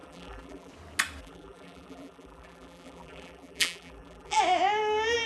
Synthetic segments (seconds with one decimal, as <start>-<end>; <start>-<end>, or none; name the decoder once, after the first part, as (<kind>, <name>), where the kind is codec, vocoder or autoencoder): 0.0-0.7 (vocoder, BigVGAN v2); 1.2-4.4

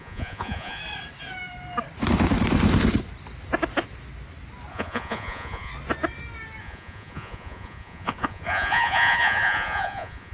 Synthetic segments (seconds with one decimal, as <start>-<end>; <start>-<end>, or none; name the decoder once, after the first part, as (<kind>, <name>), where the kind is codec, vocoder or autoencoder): 0.0-0.8 (vocoder, Vocos); 4.7-5.7; 6.6-10.3

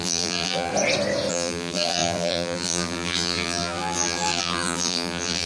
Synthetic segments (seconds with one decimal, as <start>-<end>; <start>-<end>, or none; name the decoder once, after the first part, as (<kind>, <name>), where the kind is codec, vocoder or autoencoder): 0.0-0.7 (vocoder, BigVGAN v2); 1.3-5.5

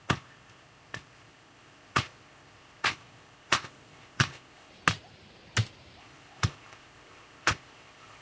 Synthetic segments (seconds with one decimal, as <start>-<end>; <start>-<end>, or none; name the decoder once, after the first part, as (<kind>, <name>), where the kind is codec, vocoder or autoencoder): 0.0-4.7 (codec, ZipCodec); 6.0-8.2

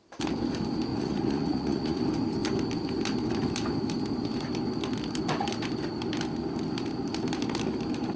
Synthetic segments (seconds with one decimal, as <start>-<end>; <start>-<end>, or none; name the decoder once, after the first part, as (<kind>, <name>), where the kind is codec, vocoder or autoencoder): 0.9-2.0 (vocoder, Vocos)